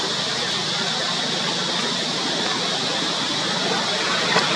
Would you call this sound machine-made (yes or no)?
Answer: no